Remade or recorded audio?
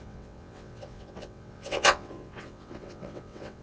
remade